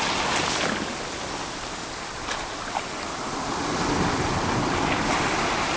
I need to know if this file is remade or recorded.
recorded